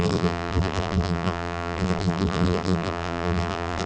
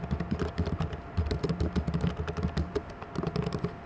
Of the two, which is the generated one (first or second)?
first